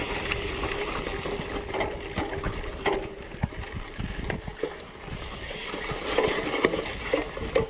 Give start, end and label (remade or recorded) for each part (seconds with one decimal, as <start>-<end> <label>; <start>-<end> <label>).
0.0-7.7 recorded